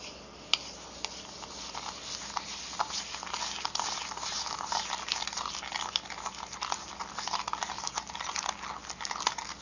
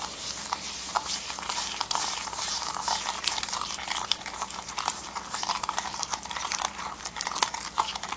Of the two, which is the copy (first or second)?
second